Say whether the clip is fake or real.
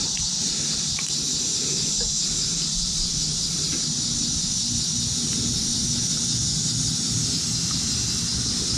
real